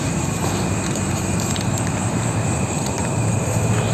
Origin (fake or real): fake